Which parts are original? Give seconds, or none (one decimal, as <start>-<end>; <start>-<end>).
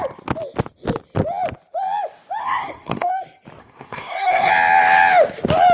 0.0-2.4; 3.1-3.6; 4.5-5.7